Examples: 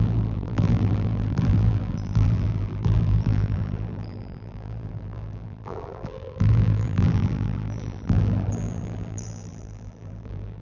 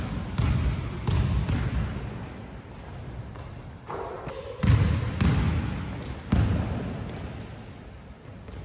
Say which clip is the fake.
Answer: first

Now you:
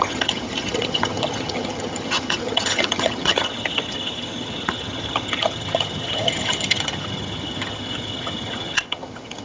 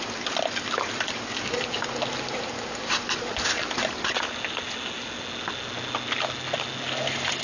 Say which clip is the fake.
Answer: first